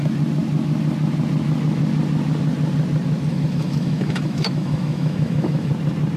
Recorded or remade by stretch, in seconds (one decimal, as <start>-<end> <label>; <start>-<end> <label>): 0.0-3.3 recorded; 3.3-5.7 remade; 5.7-6.2 recorded